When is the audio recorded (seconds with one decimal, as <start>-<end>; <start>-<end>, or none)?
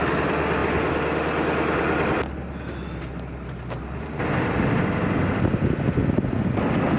0.0-7.0